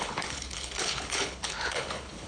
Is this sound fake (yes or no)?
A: yes